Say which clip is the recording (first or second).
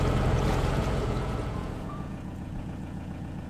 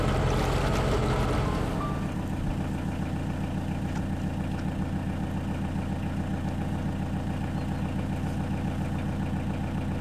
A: second